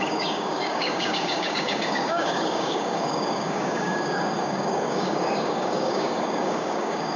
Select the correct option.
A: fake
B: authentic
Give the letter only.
A